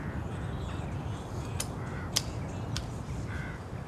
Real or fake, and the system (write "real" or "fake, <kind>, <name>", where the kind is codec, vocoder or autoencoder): real